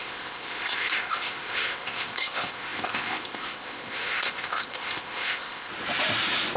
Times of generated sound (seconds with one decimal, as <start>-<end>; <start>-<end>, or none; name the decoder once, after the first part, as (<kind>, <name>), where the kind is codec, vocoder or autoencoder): 0.0-5.7 (codec, ZipCodec)